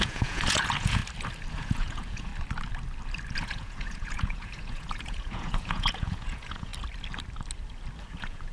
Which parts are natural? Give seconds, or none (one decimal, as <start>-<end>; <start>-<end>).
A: 1.0-1.5; 2.3-3.4; 6.7-8.0